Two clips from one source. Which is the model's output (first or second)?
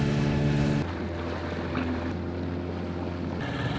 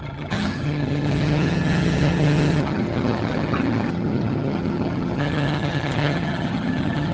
second